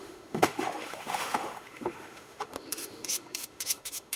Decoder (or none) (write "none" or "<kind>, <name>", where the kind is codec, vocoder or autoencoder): autoencoder, DAC-VAE